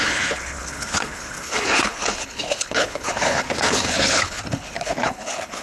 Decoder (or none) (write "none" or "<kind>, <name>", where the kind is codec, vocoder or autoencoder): codec, HILCodec